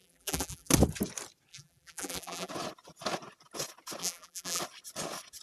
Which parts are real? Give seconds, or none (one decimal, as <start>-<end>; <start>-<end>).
0.7-1.5; 2.5-4.0; 4.6-5.4